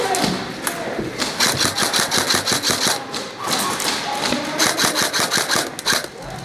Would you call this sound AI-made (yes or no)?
no